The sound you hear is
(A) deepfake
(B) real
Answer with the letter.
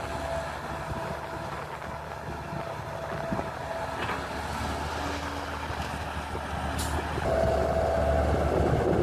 B